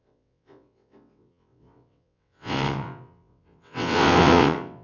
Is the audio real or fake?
fake